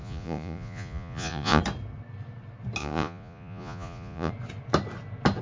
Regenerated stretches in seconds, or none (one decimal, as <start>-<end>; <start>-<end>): 0.0-1.6; 2.8-4.3